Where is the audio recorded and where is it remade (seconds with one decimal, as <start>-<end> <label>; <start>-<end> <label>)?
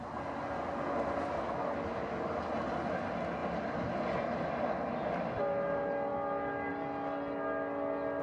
0.0-8.2 recorded